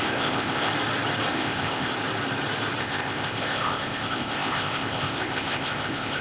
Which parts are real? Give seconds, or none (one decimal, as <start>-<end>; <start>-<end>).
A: 0.7-1.3; 1.9-2.8